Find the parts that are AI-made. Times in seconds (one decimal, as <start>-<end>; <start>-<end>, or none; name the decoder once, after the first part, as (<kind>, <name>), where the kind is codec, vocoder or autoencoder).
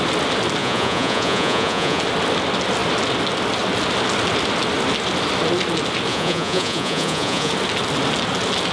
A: 0.6-2.0 (vocoder, Vocos); 6.1-7.5